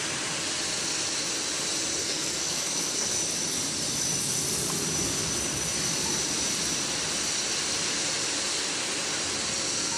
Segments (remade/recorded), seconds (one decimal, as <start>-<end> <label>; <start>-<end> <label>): 0.0-2.0 recorded; 2.0-3.2 remade; 3.2-10.0 recorded